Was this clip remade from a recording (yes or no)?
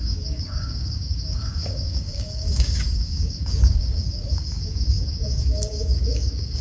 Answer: yes